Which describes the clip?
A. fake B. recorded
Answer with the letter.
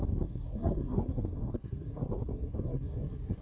A